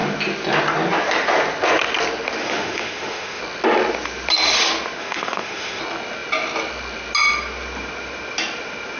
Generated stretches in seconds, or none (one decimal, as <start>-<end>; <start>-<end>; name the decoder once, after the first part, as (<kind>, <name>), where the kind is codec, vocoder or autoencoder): 2.4-3.4 (autoencoder, DAC-VAE); 5.0-5.8